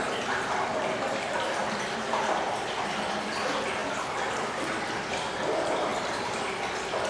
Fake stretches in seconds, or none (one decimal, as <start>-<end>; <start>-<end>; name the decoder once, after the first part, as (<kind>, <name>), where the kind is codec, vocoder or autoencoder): 1.6-2.2 (vocoder, BigVGAN v2); 5.9-6.4